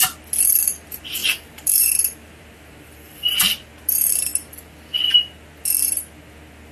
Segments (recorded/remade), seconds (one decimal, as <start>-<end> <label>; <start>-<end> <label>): 0.0-1.2 recorded; 1.2-3.2 remade; 3.2-6.7 recorded